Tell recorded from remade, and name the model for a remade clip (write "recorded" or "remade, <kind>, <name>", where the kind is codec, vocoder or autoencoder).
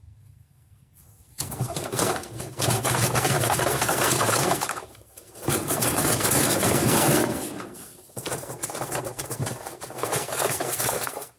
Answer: remade, codec, SNAC